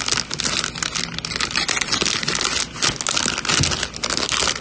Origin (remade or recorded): recorded